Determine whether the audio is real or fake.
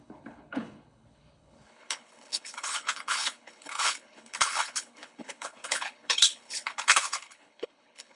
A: fake